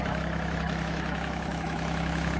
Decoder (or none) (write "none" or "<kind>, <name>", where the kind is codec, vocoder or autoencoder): autoencoder, DAC-VAE